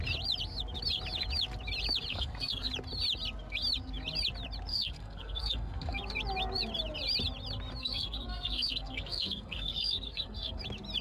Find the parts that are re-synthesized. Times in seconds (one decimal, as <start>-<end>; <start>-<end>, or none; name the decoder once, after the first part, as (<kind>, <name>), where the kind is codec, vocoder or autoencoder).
2.1-2.7 (codec, SNAC); 4.7-6.0; 7.8-10.6